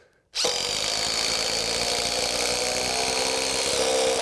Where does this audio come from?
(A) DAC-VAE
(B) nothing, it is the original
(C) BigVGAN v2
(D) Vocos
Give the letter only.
B